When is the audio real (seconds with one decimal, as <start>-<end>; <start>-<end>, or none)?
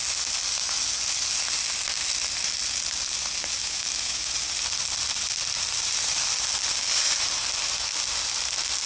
0.0-3.6; 4.3-8.9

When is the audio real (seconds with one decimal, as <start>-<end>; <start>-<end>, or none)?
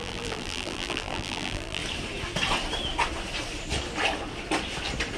1.8-5.2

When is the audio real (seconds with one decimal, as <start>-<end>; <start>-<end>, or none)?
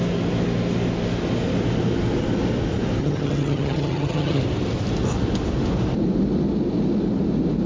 0.0-3.0; 4.4-7.7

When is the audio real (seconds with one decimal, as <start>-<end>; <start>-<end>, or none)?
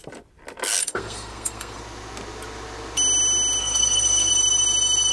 0.0-0.8; 1.8-3.6; 4.3-5.1